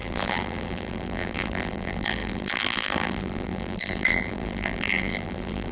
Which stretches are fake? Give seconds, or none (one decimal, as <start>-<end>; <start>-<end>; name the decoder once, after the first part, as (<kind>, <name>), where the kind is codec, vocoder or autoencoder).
0.0-5.7 (vocoder, BigVGAN v2)

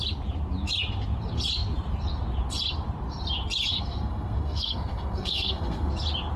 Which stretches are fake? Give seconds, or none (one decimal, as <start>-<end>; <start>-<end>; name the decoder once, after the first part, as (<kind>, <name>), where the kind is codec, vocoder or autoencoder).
3.7-5.9 (codec, SNAC)

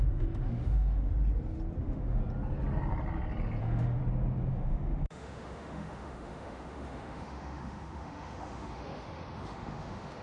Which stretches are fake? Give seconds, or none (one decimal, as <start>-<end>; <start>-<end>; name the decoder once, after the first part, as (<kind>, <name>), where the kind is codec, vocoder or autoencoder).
0.0-1.1 (autoencoder, DAC-VAE); 1.8-2.2; 3.6-4.0; 4.5-10.2

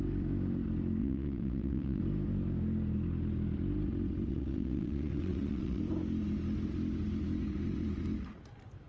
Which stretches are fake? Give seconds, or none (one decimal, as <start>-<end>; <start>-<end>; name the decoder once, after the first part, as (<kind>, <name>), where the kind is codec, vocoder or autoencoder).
1.0-2.0 (vocoder, WaveNeXt); 4.3-5.8

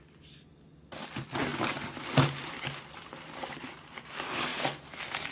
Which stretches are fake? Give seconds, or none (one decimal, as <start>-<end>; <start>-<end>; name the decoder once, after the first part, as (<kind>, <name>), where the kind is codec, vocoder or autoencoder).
1.5-3.5 (vocoder, BigVGAN v2)

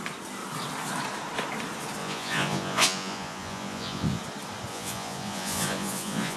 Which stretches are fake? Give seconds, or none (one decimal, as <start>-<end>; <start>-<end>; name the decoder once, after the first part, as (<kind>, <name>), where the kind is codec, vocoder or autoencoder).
2.0-4.2 (vocoder, Vocos); 4.7-6.4